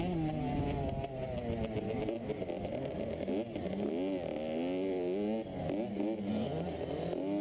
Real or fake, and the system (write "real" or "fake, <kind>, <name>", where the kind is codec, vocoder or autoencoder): real